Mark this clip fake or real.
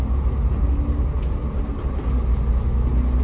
real